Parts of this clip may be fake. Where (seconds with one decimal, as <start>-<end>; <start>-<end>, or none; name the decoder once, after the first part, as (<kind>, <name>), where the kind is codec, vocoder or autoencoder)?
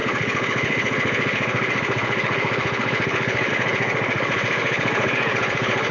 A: 0.0-5.9 (codec, HILCodec)